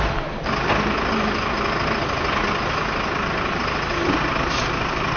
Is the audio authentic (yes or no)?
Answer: yes